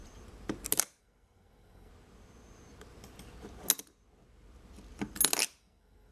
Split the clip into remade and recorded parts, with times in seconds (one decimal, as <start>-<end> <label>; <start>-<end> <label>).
0.0-1.0 recorded; 1.0-1.9 remade; 1.9-5.6 recorded; 5.6-6.1 remade